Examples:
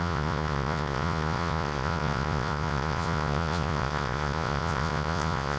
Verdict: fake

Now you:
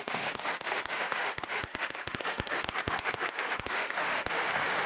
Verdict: fake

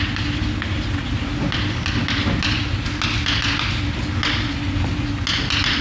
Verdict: real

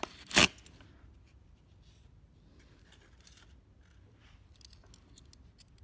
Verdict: real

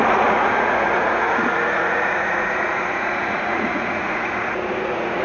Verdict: fake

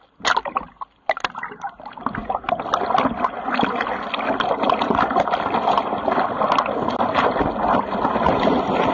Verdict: real